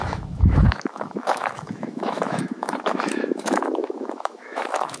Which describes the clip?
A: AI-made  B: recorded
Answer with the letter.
A